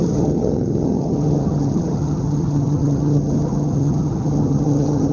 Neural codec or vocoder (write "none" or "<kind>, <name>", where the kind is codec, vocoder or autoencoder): vocoder, HiFi-GAN